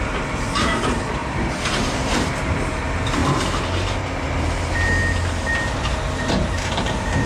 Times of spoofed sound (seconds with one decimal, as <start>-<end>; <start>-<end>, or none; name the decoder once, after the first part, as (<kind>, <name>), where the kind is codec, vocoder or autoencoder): 0.0-3.2 (vocoder, BigVGAN v2); 6.3-7.3